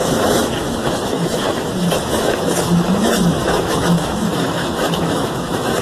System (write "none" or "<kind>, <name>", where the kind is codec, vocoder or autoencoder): autoencoder, DAC-VAE